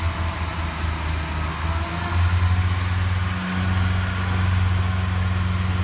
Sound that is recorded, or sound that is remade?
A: recorded